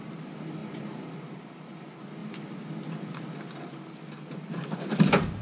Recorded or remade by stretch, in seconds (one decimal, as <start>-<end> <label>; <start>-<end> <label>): 0.0-5.4 recorded